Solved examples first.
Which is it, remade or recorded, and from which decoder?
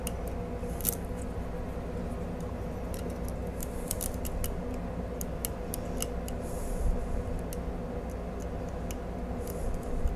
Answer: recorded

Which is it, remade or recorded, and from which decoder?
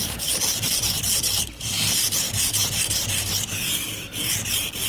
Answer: remade, vocoder, BigVGAN v2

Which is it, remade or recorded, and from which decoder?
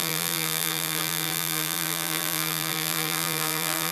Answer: remade, vocoder, BigVGAN v2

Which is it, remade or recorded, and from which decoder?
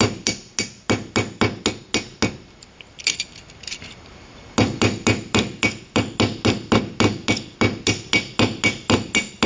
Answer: recorded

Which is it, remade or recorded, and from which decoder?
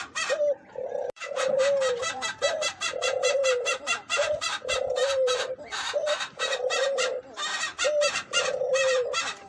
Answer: remade, vocoder, BigVGAN v2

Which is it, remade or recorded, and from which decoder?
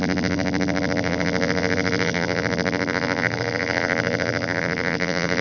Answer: remade, vocoder, BigVGAN v2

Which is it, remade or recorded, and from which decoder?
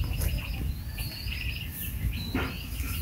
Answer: recorded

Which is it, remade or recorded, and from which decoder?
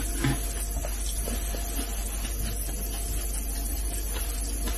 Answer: recorded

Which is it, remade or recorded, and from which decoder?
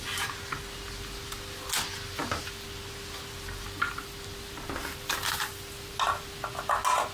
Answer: recorded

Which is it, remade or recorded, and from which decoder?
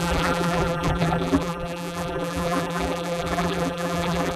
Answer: remade, vocoder, BigVGAN v2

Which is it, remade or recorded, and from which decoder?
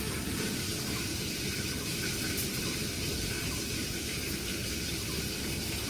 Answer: recorded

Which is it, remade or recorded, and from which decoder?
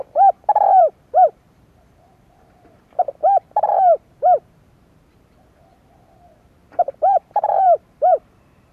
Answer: remade, vocoder, BigVGAN v2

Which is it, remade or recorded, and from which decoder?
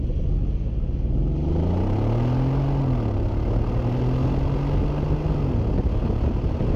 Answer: recorded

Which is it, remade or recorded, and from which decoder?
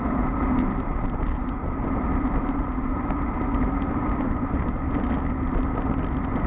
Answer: recorded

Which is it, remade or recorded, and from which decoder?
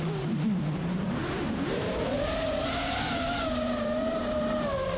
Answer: remade, vocoder, BigVGAN v2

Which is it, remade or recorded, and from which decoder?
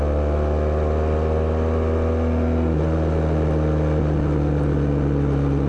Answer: recorded